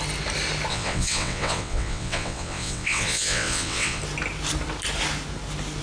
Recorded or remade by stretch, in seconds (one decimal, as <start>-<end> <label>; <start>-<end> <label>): 0.0-0.7 recorded; 0.7-4.0 remade; 4.0-5.8 recorded